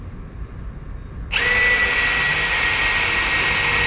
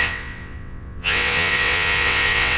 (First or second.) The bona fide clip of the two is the first